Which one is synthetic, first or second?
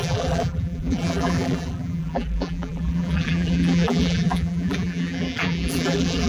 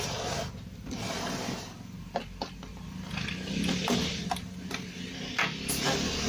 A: first